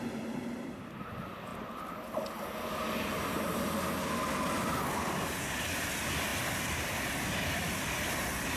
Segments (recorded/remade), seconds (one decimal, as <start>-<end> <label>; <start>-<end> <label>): 0.0-8.6 recorded